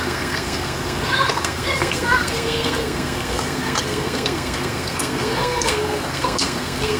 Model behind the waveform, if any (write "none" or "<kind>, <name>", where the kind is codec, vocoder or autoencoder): codec, SNAC